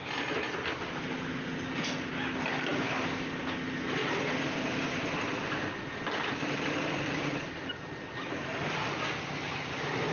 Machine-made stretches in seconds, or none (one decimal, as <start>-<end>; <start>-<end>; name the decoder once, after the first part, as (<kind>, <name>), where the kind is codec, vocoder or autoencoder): 2.7-3.4 (vocoder, BigVGAN v2); 4.0-8.3